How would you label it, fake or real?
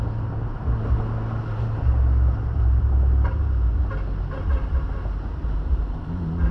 real